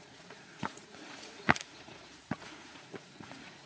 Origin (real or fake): fake